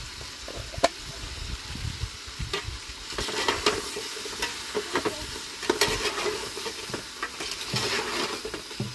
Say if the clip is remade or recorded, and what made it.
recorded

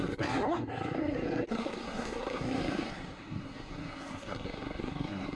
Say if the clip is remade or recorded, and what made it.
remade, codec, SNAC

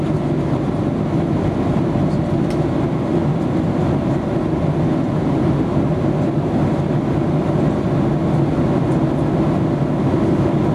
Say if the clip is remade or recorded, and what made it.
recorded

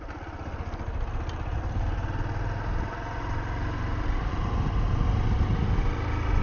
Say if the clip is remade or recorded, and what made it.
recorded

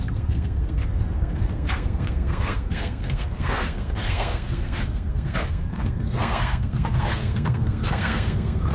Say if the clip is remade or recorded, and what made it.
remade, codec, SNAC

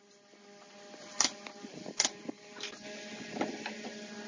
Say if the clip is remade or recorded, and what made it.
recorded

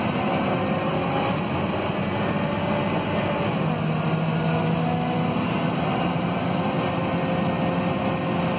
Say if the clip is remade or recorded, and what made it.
recorded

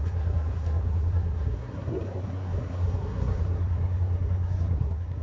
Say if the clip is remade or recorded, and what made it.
remade, codec, SNAC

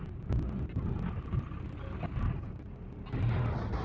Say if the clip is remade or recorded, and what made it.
recorded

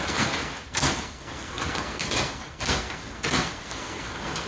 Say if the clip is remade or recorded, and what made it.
remade, codec, SNAC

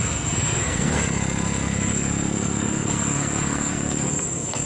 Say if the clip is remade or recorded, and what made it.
remade, codec, SNAC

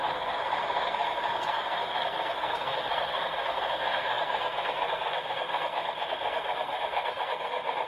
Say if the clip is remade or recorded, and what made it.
remade, codec, SNAC